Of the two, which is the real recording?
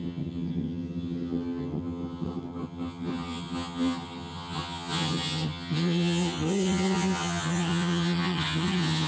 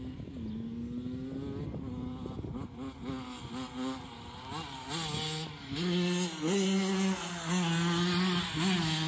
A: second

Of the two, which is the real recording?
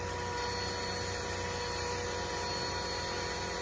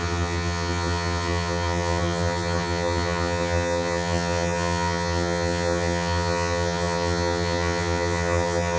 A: first